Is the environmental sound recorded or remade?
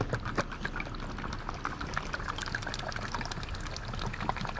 recorded